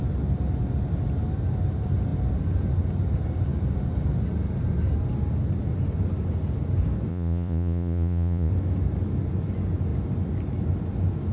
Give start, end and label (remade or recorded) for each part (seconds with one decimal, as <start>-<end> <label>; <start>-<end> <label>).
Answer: 0.0-7.1 recorded; 7.1-8.5 remade; 8.5-11.3 recorded